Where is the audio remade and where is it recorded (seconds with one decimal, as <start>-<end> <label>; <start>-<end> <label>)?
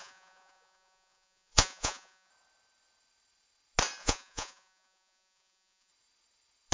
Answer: 0.0-2.3 remade; 2.3-4.0 recorded; 4.0-5.9 remade; 5.9-6.7 recorded